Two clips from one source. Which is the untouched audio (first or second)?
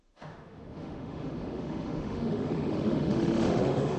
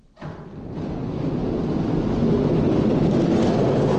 second